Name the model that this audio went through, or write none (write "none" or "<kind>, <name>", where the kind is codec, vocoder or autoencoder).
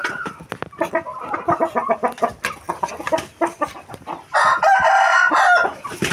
none